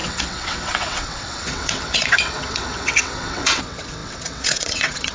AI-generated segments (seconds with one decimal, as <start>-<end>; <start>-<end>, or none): 0.0-5.1